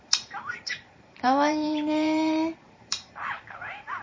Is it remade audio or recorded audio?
remade